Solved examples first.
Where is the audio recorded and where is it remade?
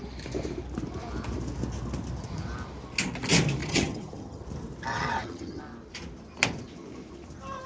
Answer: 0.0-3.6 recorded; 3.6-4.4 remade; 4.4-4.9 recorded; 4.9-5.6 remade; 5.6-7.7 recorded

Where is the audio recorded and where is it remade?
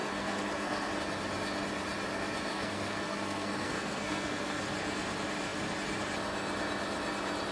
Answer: 0.0-0.9 remade; 0.9-2.5 recorded; 2.5-4.6 remade; 4.6-7.5 recorded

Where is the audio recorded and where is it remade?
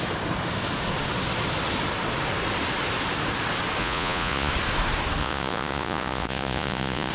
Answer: 0.0-3.8 recorded; 3.8-4.5 remade; 4.5-5.2 recorded; 5.2-7.1 remade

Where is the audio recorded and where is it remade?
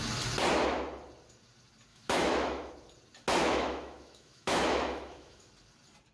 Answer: 0.0-1.9 recorded; 1.9-2.7 remade; 2.7-3.4 recorded; 3.4-5.5 remade; 5.5-6.1 recorded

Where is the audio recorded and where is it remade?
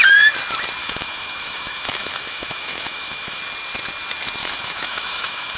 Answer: 0.0-0.8 recorded; 0.8-3.4 remade; 3.4-4.4 recorded; 4.4-5.6 remade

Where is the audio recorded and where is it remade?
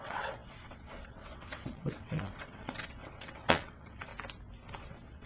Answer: 0.0-4.1 remade; 4.1-4.8 recorded; 4.8-5.3 remade